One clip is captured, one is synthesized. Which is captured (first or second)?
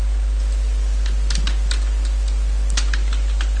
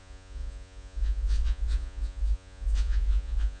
first